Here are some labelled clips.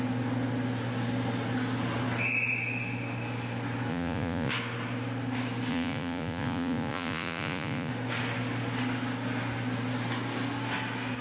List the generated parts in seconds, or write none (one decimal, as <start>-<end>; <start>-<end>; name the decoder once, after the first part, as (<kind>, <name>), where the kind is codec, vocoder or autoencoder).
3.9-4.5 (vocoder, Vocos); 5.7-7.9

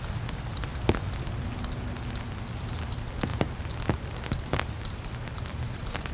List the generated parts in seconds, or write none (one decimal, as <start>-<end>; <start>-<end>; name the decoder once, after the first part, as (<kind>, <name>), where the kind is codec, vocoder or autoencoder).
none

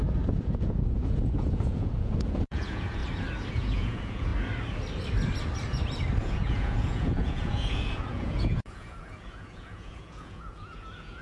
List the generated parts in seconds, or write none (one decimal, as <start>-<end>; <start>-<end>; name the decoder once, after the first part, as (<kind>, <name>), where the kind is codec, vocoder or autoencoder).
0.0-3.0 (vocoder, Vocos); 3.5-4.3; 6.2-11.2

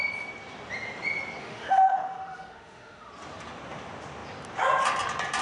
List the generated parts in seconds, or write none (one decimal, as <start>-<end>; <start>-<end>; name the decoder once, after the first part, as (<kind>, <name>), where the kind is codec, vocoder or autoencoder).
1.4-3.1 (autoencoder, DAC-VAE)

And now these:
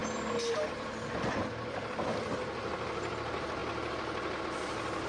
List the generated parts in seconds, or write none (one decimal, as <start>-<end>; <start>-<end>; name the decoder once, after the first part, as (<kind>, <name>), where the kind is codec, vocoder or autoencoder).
none

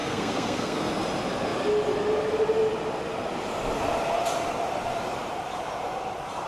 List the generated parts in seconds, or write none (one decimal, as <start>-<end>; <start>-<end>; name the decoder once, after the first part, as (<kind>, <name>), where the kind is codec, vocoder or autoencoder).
0.0-0.9 (codec, SNAC)